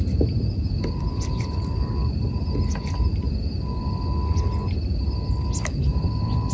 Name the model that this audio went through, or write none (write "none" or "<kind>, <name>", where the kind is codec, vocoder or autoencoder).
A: none